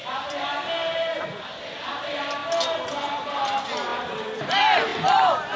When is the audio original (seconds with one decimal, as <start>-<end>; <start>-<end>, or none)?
1.1-1.9; 2.4-3.1; 3.9-4.5